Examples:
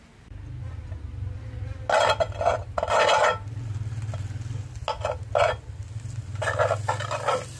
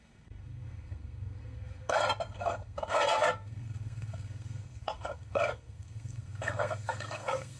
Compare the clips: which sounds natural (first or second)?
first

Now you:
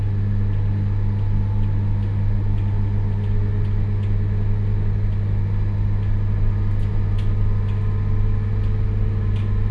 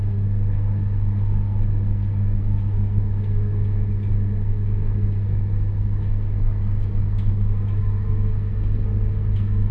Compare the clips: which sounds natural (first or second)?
first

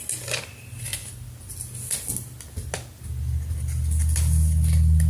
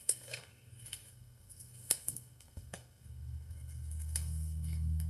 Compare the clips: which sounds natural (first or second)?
first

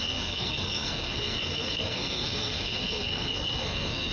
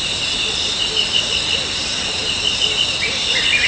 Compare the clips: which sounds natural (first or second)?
second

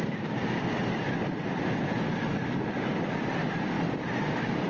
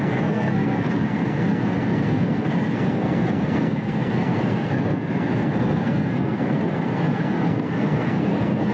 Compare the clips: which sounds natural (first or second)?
first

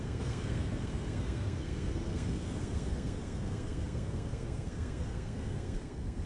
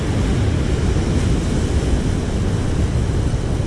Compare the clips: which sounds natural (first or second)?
second